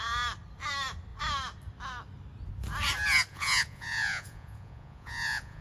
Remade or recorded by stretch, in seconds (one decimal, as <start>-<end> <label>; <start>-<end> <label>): 0.0-3.3 recorded; 3.3-5.6 remade